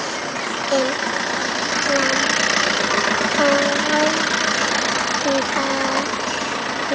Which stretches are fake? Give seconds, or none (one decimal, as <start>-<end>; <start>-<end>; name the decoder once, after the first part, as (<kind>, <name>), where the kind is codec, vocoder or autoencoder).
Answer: none